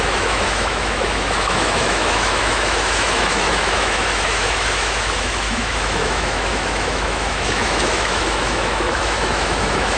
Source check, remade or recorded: remade